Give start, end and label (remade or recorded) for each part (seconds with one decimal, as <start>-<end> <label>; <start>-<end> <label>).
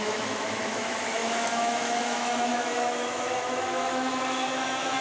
0.0-5.0 remade